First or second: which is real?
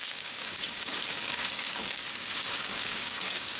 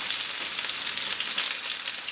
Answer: second